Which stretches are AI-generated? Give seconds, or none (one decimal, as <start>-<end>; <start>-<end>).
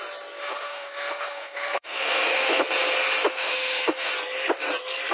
0.4-2.6; 3.3-4.1